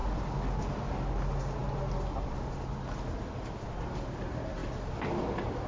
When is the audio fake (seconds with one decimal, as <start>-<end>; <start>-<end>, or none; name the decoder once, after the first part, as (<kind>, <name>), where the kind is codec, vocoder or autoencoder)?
0.0-0.7 (vocoder, BigVGAN v2); 4.6-5.7